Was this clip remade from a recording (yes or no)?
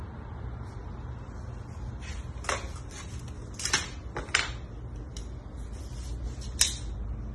no